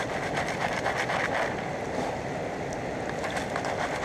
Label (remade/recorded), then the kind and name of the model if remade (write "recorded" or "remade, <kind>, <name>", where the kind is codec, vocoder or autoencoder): recorded